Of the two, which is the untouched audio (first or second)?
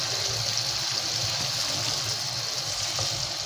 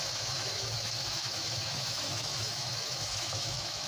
first